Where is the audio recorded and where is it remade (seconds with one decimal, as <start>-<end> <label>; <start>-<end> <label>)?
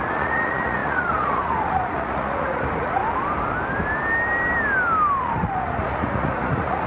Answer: 0.0-3.0 remade; 3.0-5.2 recorded; 5.2-6.9 remade